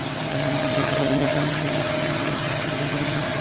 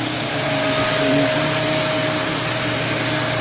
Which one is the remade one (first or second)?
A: first